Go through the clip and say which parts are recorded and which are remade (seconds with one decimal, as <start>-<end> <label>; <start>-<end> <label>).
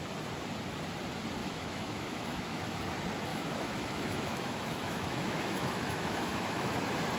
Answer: 0.0-1.4 recorded; 1.4-2.8 remade; 2.8-3.3 recorded; 3.3-6.8 remade; 6.8-7.2 recorded